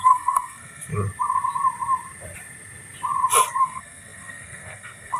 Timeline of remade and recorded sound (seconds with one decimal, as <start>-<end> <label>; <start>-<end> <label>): 0.0-0.9 remade; 0.9-3.6 recorded; 3.6-5.2 remade